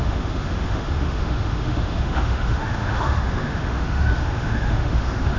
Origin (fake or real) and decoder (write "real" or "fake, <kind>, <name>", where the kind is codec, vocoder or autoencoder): fake, autoencoder, DAC-VAE